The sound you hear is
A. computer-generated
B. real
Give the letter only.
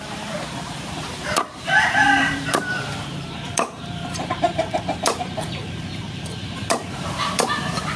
A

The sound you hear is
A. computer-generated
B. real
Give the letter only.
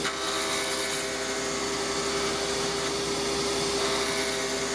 B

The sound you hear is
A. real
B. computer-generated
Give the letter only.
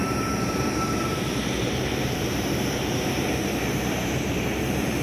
B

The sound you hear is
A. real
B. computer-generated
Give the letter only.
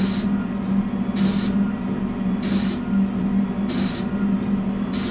A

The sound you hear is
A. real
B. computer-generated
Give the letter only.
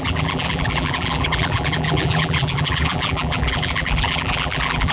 B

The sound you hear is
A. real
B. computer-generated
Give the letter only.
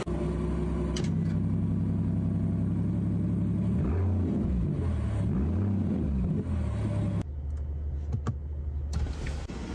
A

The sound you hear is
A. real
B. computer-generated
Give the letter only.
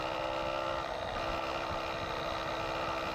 A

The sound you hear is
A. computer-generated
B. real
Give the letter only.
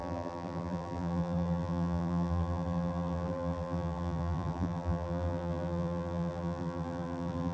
A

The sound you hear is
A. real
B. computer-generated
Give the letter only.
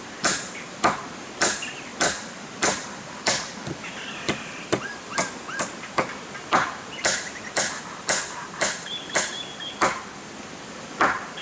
B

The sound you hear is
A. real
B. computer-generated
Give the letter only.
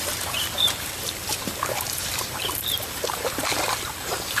B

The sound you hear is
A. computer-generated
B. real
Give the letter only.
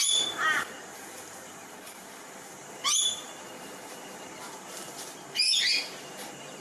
A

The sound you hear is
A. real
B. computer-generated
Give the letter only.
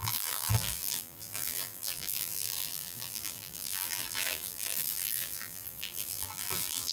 B